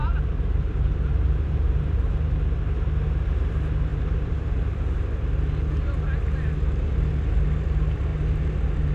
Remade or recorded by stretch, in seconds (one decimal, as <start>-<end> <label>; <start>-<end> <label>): 0.0-2.3 remade; 2.3-3.9 recorded; 3.9-5.0 remade; 5.0-8.9 recorded